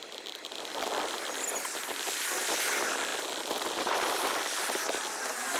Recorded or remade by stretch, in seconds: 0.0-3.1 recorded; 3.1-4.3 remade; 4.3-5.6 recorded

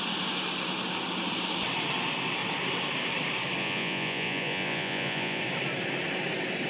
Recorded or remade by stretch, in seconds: 0.0-3.6 recorded; 3.6-5.4 remade; 5.4-6.7 recorded

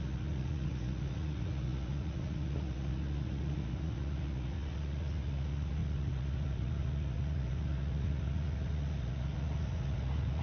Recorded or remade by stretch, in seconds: 0.0-10.4 remade

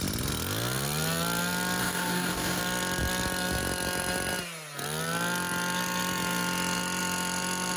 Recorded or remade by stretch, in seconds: 0.0-1.8 recorded; 1.8-2.6 remade; 2.6-7.8 recorded

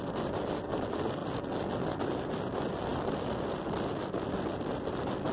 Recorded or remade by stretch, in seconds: 0.0-5.3 recorded